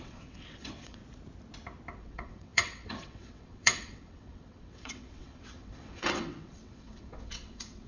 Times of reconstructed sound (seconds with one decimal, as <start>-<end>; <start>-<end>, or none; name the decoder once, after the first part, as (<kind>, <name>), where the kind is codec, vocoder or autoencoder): 0.0-1.0 (vocoder, WaveNeXt); 2.0-7.9